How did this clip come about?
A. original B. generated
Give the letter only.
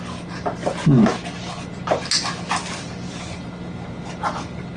A